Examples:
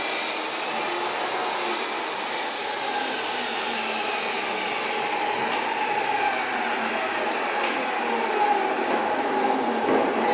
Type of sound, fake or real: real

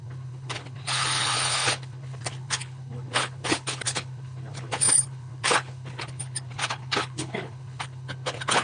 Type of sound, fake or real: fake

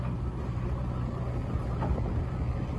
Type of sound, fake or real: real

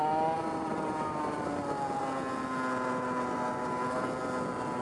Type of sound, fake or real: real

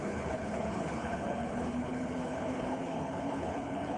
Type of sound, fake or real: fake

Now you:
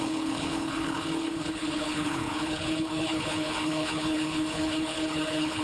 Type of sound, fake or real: fake